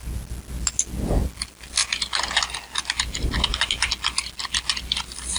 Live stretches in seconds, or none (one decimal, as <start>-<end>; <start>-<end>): 0.0-5.4